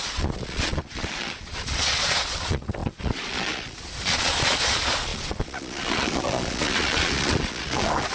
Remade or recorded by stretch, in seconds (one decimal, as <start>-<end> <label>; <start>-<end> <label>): 0.0-8.1 remade